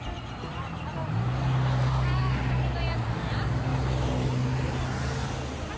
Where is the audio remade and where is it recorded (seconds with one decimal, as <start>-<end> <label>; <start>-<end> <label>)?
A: 0.0-5.8 recorded